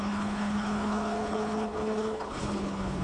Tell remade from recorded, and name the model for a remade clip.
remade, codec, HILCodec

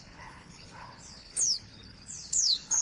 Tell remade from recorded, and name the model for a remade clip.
remade, codec, HILCodec